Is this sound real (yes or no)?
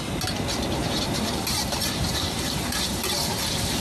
no